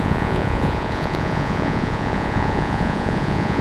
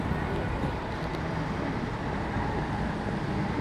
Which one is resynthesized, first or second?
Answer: first